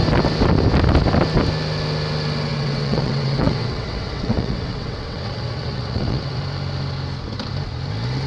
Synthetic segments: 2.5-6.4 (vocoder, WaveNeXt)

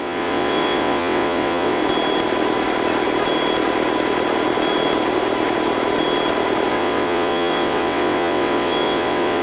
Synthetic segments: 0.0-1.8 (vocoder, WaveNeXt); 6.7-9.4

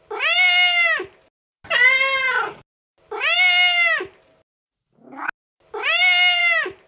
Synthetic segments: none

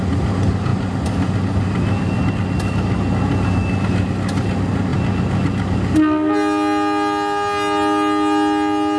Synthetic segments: none